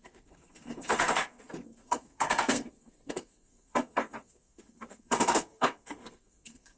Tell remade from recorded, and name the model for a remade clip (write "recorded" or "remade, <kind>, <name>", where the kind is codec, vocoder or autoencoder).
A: remade, codec, SNAC